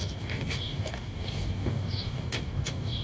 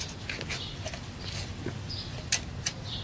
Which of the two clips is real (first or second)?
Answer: second